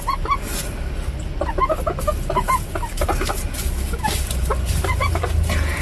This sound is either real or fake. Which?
real